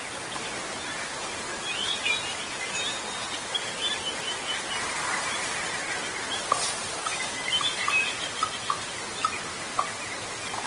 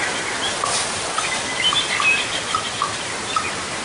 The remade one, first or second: second